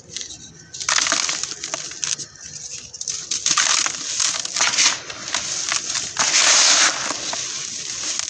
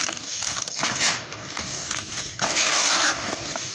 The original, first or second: first